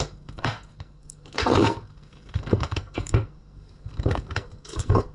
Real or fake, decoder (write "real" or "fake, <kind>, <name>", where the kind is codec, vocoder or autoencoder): fake, codec, SNAC